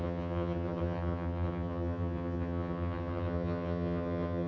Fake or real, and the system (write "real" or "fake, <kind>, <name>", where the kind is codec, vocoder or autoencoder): fake, vocoder, HiFi-GAN